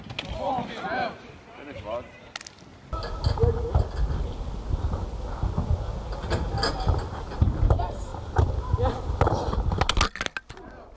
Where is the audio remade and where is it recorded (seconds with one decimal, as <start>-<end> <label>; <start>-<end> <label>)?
0.0-11.0 recorded